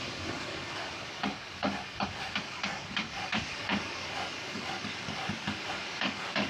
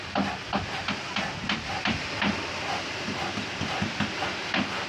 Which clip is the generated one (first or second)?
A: first